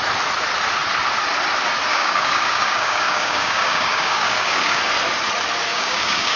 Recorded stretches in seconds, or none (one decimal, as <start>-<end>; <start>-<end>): 0.0-1.9; 4.8-5.7

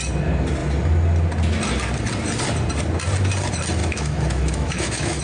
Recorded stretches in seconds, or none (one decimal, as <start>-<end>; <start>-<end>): 0.0-3.8

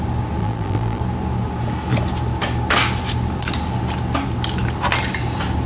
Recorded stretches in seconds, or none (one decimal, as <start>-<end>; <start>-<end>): 0.0-0.4; 1.0-5.7

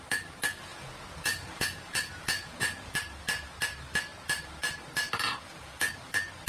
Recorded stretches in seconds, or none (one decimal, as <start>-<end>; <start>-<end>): 0.0-0.7; 2.9-6.5